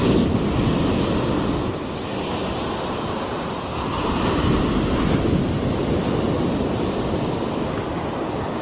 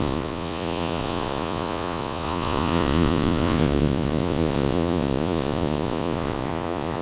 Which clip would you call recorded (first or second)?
first